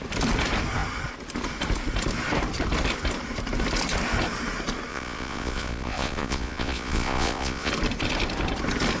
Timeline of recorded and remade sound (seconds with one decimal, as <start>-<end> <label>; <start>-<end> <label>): 0.0-4.9 recorded; 4.9-7.7 remade; 7.7-9.0 recorded